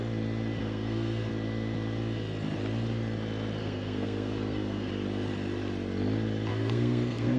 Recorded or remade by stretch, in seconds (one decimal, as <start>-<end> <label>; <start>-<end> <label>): 0.0-0.6 recorded; 0.6-1.3 remade; 1.3-3.6 recorded; 3.6-4.9 remade; 4.9-6.5 recorded; 6.5-7.4 remade